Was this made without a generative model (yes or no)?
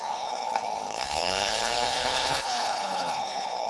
no